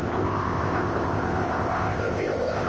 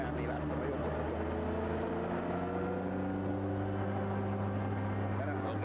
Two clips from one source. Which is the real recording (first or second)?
second